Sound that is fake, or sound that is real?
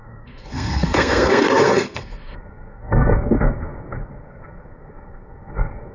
fake